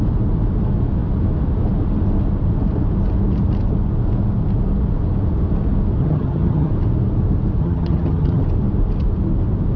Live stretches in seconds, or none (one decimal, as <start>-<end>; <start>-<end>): 0.0-6.0; 6.7-7.6; 8.4-9.8